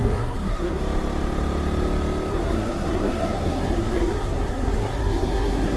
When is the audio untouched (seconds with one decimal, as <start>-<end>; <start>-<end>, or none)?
0.8-2.3